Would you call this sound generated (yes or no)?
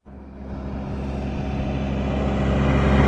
no